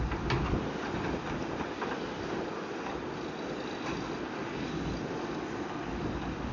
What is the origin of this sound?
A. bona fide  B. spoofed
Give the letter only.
A